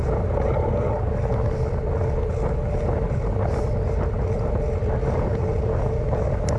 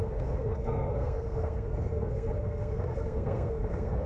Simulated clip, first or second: second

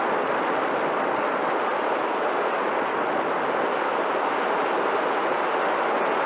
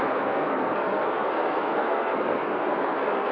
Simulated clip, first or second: second